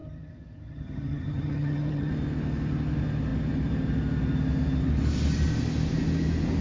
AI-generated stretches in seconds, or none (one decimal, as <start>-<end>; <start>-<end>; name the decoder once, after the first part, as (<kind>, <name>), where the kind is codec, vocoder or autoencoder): 0.0-2.1 (vocoder, HiFi-GAN)